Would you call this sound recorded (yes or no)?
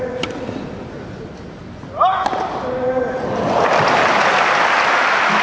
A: yes